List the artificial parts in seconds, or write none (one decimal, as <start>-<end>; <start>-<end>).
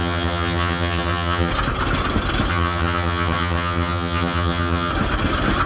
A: 0.0-1.5; 2.5-4.9